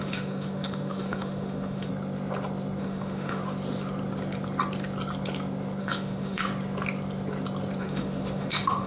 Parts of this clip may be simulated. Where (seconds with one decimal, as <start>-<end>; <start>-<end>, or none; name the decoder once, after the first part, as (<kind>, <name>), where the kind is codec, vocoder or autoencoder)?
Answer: 0.0-1.9 (autoencoder, DAC-VAE); 2.8-3.4; 5.8-6.5; 7.8-8.9